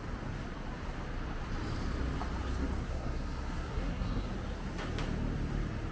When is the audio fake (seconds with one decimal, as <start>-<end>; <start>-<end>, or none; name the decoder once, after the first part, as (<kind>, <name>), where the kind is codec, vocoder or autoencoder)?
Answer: 2.8-4.3 (codec, SNAC)